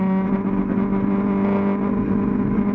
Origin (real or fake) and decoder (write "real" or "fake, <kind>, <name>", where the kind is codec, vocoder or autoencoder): real